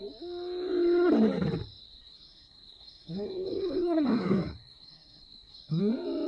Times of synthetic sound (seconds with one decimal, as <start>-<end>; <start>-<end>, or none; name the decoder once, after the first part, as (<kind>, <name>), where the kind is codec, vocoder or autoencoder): 2.0-5.8 (codec, SNAC)